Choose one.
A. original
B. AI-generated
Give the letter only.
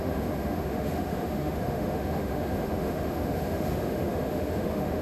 B